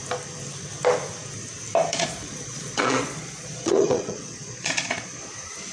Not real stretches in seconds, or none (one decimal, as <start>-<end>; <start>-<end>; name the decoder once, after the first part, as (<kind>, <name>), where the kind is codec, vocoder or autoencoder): 1.9-5.3 (vocoder, Vocos)